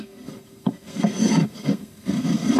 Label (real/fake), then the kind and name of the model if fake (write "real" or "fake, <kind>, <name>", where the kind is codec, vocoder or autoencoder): fake, codec, SNAC